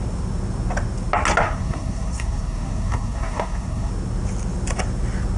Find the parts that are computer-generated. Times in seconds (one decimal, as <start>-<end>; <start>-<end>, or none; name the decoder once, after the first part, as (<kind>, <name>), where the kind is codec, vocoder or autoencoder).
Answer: 1.4-3.9 (codec, SNAC)